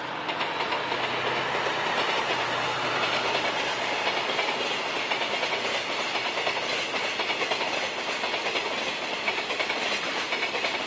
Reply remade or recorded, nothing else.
recorded